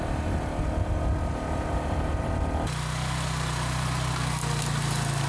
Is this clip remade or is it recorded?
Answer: recorded